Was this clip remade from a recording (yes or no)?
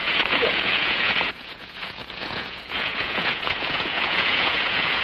yes